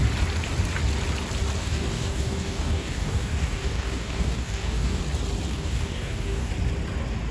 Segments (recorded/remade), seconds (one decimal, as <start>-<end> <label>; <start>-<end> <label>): 0.0-1.6 recorded; 1.6-5.0 remade; 5.0-5.5 recorded; 5.5-6.5 remade; 6.5-7.3 recorded